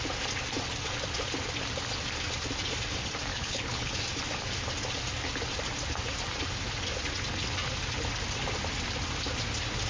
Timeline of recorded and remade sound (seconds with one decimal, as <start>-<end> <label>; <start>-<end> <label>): 0.0-3.3 recorded; 3.3-4.0 remade; 4.0-9.9 recorded

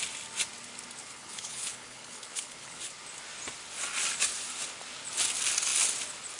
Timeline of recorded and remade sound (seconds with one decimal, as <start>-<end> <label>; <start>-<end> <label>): 0.0-1.0 recorded; 1.0-2.9 remade; 2.9-6.4 recorded

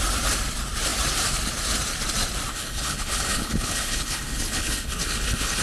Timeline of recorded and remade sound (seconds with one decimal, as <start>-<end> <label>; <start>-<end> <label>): 0.0-2.5 recorded; 2.5-5.6 remade

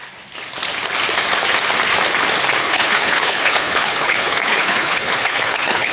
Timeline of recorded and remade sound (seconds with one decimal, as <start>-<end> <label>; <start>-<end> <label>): 0.0-2.6 recorded; 2.6-5.9 remade